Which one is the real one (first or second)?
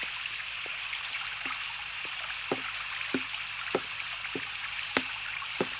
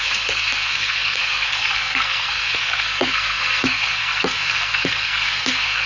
first